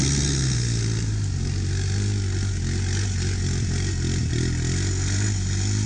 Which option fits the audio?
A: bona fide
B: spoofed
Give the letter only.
A